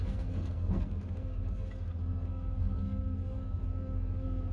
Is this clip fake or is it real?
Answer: fake